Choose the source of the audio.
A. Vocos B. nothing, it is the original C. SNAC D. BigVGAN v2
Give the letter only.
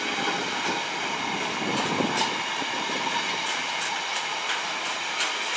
B